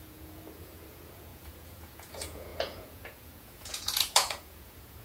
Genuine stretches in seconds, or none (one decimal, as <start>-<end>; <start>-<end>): none